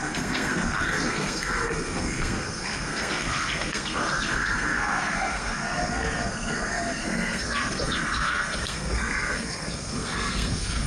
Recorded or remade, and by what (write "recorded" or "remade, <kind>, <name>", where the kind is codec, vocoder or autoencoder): remade, codec, SNAC